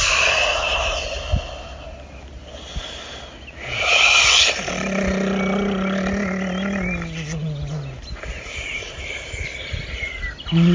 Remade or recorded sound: recorded